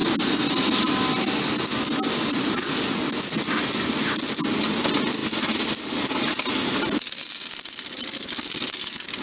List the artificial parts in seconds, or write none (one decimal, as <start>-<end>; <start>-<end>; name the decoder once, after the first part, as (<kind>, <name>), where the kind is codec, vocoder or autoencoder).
0.0-0.5 (vocoder, BigVGAN v2)